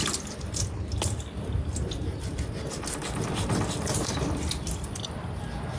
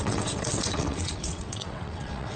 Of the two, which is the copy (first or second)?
second